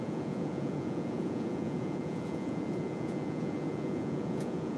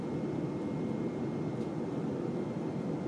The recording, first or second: second